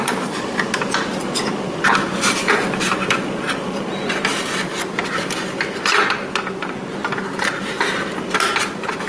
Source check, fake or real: real